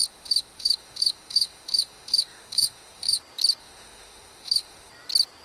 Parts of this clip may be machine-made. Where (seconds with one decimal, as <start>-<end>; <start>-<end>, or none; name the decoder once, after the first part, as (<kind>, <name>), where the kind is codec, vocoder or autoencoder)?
0.0-3.2 (autoencoder, DAC-VAE); 3.6-4.9